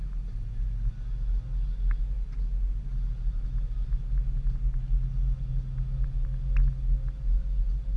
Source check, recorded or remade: recorded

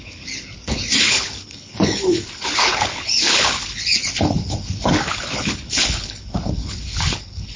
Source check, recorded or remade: remade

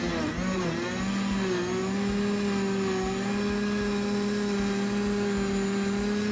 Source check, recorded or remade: recorded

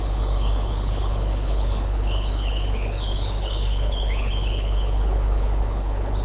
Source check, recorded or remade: remade